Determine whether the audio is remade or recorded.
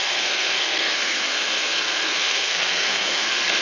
remade